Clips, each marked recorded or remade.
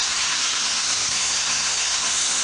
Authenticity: remade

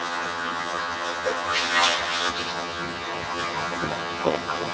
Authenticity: remade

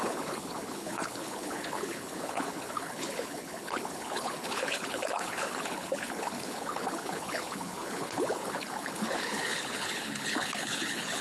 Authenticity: remade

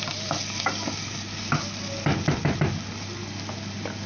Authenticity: recorded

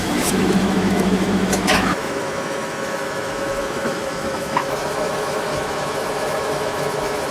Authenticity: remade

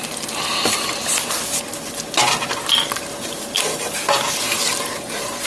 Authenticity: recorded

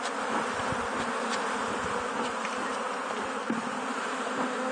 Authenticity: recorded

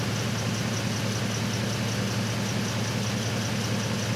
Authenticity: recorded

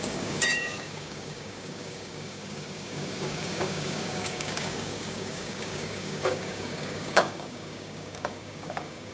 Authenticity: remade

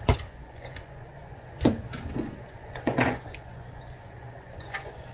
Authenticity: remade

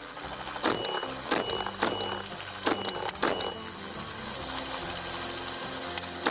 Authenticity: recorded